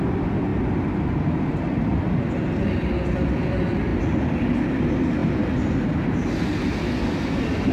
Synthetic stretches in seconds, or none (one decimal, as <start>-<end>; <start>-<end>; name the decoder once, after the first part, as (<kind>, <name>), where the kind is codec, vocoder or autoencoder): none